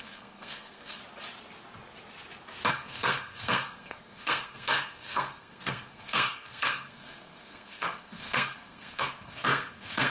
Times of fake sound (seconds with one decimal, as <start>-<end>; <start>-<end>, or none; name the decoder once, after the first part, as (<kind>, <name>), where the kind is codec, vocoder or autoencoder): 0.0-1.0 (codec, SNAC); 2.7-10.1